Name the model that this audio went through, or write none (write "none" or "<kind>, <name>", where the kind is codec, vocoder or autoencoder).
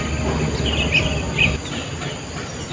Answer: none